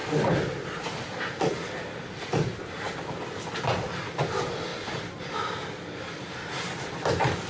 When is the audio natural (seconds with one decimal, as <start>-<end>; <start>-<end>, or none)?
0.0-7.5